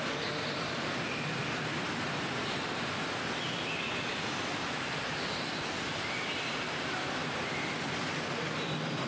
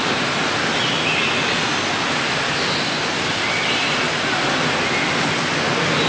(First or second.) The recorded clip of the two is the second